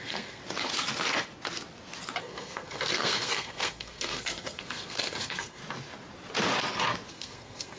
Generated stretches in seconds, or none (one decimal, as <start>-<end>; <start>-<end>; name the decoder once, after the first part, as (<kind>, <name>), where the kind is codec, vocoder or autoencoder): 0.0-0.4 (codec, SNAC); 2.2-5.6; 7.1-7.8